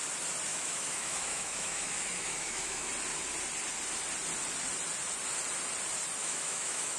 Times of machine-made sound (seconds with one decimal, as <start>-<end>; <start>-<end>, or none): 0.5-2.9; 6.2-7.0